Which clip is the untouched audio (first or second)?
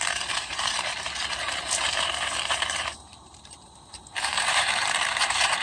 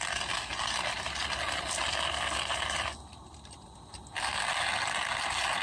second